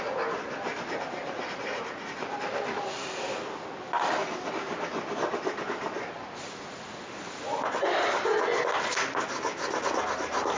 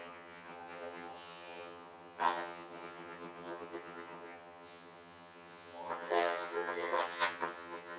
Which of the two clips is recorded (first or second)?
first